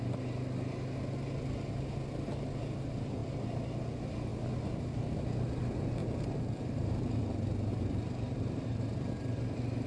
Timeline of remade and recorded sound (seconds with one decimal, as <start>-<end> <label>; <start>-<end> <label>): 0.0-6.0 recorded; 6.0-7.2 remade; 7.2-7.7 recorded; 7.7-9.1 remade; 9.1-9.9 recorded

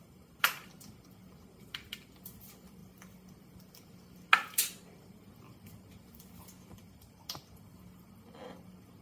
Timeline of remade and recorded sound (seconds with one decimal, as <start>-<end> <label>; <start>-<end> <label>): 0.0-9.0 recorded